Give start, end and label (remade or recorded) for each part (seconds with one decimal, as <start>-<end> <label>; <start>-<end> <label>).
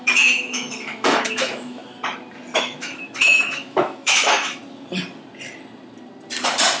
0.0-1.8 remade; 1.8-2.6 recorded; 2.6-4.6 remade; 4.6-6.8 recorded